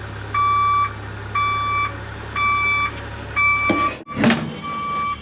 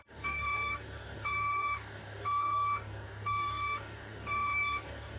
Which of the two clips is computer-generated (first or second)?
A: second